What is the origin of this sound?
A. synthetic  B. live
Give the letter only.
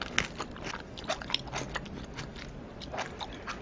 B